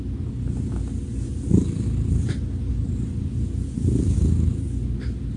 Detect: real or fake real